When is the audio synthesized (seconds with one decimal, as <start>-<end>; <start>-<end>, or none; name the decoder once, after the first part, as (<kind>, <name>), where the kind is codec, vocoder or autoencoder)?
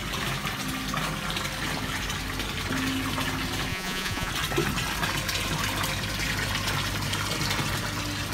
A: 3.7-4.3 (vocoder, Vocos)